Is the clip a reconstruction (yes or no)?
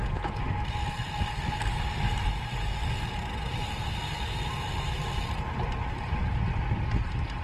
no